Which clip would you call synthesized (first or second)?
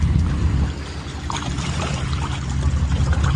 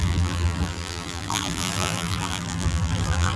second